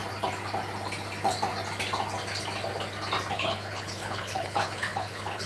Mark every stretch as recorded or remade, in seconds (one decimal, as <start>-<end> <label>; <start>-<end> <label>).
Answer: 0.0-3.3 recorded; 3.3-5.5 remade